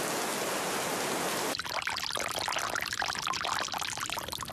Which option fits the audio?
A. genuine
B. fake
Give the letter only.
A